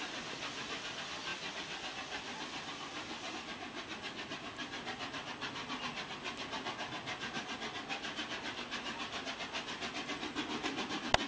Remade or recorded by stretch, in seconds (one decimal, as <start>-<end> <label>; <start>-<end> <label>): 0.0-11.3 recorded